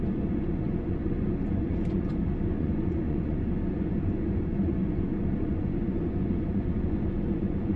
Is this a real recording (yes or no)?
no